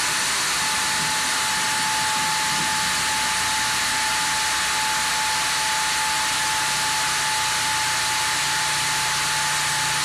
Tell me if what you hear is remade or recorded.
recorded